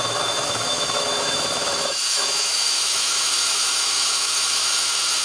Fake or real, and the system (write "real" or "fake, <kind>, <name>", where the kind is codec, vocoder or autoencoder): fake, autoencoder, DAC-VAE